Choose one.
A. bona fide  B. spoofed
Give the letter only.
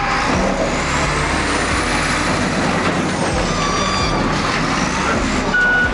A